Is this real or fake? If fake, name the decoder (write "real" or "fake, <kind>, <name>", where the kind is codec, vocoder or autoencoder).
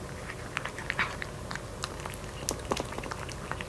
real